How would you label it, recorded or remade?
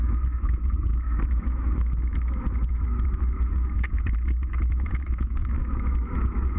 remade